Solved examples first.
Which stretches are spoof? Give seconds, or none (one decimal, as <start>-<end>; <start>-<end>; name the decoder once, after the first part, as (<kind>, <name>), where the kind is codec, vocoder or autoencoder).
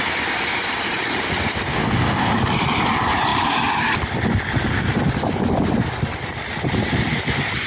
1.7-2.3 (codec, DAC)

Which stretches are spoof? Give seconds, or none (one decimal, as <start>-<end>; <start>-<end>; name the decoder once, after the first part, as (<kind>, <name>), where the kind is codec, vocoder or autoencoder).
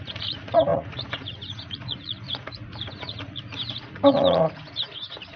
0.0-5.4 (vocoder, Vocos)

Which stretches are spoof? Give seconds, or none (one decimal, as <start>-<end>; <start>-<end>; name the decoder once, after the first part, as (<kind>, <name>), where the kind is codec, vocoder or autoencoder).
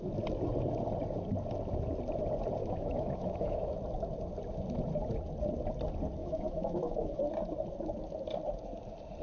2.6-3.7 (autoencoder, DAC-VAE); 6.2-7.2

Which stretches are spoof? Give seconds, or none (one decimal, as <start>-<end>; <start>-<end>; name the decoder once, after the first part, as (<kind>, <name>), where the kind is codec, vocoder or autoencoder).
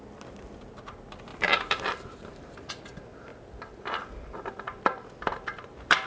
1.3-2.7 (vocoder, BigVGAN v2)